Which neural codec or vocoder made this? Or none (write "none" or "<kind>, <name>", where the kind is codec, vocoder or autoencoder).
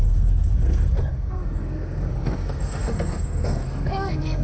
codec, SNAC